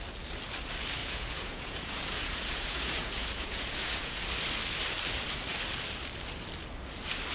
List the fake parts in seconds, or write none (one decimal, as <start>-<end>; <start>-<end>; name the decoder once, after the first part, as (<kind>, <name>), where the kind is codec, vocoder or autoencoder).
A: 1.0-4.2 (vocoder, Vocos)